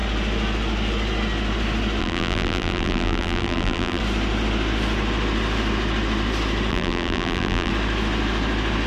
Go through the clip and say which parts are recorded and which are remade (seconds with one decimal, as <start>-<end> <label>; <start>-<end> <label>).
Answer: 0.0-2.0 recorded; 2.0-4.0 remade; 4.0-6.7 recorded; 6.7-7.7 remade; 7.7-8.9 recorded